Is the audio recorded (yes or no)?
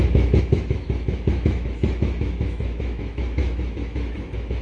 no